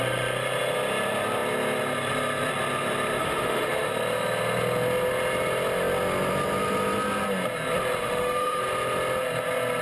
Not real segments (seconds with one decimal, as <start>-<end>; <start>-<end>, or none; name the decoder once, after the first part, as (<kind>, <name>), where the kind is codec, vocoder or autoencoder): 3.2-3.9 (autoencoder, DAC-VAE); 8.0-8.6